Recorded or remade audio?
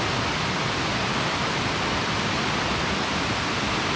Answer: recorded